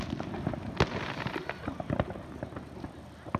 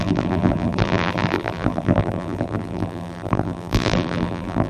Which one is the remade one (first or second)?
second